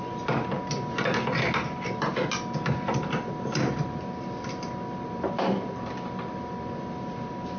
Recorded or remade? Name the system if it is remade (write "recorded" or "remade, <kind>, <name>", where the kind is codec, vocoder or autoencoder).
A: recorded